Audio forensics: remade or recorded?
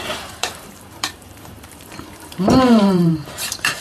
remade